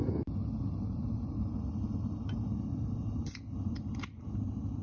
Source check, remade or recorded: recorded